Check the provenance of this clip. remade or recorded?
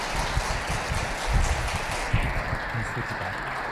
recorded